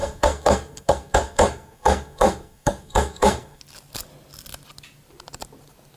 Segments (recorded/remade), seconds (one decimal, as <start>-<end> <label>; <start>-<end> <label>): 0.0-3.6 remade; 3.6-6.0 recorded